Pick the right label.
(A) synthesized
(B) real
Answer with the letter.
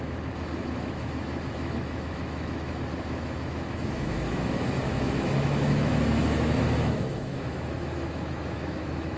A